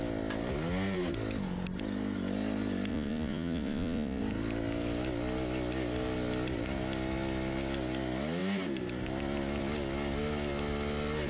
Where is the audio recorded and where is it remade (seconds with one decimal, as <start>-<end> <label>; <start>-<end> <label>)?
0.0-2.9 recorded; 2.9-4.2 remade; 4.2-11.3 recorded